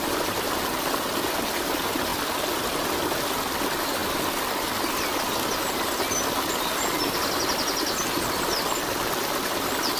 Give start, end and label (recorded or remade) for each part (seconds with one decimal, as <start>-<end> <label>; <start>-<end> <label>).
0.0-10.0 recorded